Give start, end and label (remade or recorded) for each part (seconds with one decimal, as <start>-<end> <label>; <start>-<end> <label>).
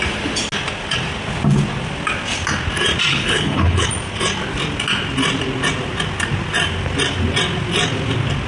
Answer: 0.0-3.1 recorded; 3.1-3.9 remade; 3.9-8.5 recorded